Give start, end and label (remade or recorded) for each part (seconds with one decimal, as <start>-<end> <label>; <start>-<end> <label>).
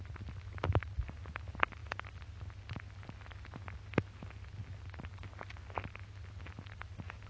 0.0-7.3 recorded